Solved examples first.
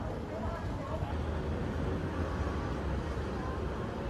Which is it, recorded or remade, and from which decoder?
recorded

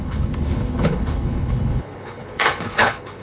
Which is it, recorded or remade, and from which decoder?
remade, codec, HILCodec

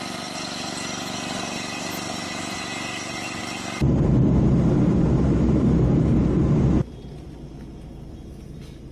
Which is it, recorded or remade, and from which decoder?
recorded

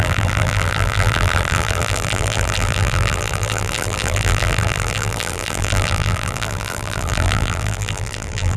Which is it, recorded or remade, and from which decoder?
remade, vocoder, BigVGAN v2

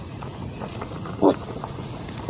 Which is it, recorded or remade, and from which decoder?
remade, vocoder, Vocos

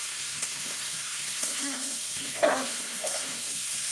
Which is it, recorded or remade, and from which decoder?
remade, codec, SNAC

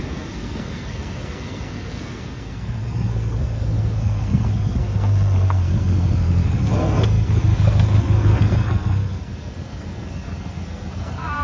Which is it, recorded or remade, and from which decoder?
remade, codec, SNAC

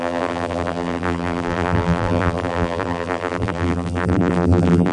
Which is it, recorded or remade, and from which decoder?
remade, vocoder, BigVGAN v2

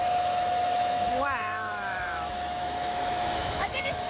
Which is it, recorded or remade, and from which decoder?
remade, autoencoder, DAC-VAE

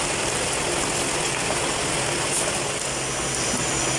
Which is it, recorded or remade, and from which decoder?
recorded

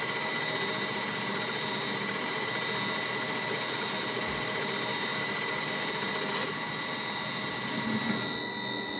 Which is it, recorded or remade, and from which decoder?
recorded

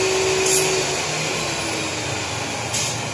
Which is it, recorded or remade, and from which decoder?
recorded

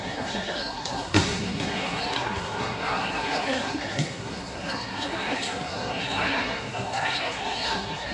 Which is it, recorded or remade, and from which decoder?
remade, codec, SNAC